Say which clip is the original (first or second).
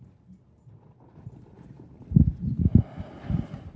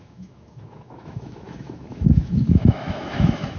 first